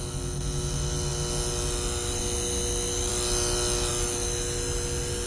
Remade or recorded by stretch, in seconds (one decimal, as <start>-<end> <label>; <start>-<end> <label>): 0.0-5.3 recorded